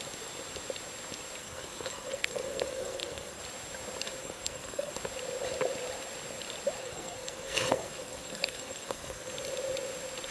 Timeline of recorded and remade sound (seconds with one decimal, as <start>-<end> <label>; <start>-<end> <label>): 0.0-1.4 recorded; 1.4-3.4 remade; 3.4-4.2 recorded; 4.2-4.9 remade; 4.9-6.8 recorded; 6.8-9.3 remade; 9.3-10.3 recorded